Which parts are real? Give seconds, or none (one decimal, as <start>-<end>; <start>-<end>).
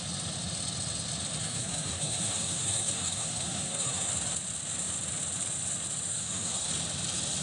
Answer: 0.0-1.4; 4.1-6.1; 6.7-7.4